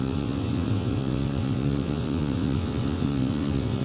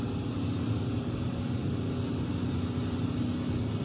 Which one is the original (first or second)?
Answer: second